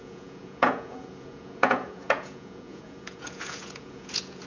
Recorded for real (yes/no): no